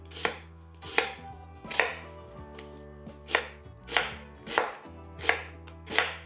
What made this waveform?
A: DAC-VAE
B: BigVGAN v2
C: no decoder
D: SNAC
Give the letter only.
C